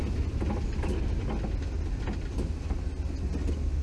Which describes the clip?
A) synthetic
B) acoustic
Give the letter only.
B